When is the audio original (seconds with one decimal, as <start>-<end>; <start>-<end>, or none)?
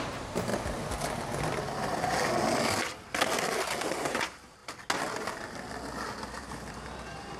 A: 0.5-3.8; 4.6-6.3